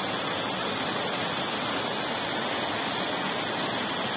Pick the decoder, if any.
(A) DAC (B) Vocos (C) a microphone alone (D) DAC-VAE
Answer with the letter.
C